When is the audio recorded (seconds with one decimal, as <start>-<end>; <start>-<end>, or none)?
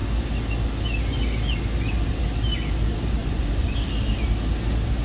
0.0-3.2; 3.7-5.0